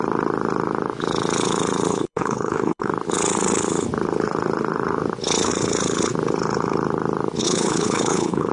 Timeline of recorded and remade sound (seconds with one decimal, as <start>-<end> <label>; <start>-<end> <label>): 0.0-1.9 recorded; 1.9-2.9 remade; 2.9-7.4 recorded; 7.4-8.5 remade